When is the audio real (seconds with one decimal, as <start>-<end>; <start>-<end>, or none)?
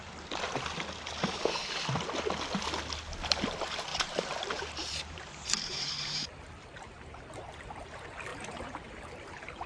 0.0-3.9; 6.5-8.3